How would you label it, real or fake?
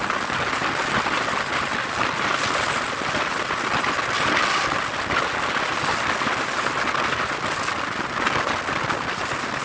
real